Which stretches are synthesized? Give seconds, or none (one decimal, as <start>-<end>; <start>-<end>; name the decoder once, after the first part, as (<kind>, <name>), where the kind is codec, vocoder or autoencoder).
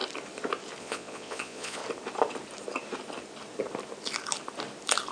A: 0.8-1.8 (vocoder, Vocos)